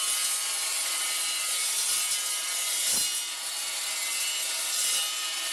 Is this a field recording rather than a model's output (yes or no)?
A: yes